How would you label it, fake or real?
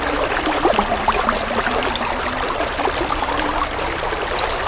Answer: real